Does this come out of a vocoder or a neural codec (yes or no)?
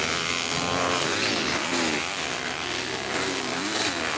no